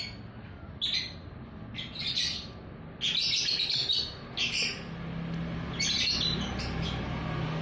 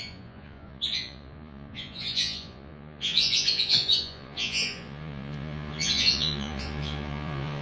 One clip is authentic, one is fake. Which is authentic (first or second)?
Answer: first